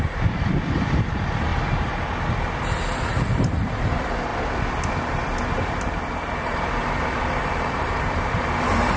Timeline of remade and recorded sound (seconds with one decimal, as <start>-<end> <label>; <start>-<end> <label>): 0.0-1.5 remade; 1.5-3.0 recorded; 3.0-4.3 remade; 4.3-5.5 recorded; 5.5-9.0 remade